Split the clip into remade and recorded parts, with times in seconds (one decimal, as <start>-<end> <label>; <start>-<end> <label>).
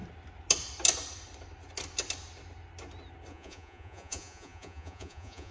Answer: 0.0-3.3 recorded; 3.3-5.5 remade